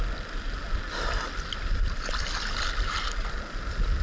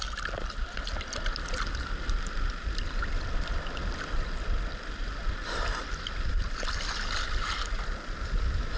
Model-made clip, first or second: second